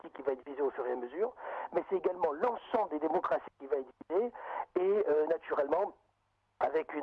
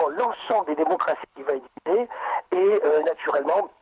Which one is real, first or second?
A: first